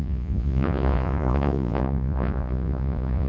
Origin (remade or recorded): remade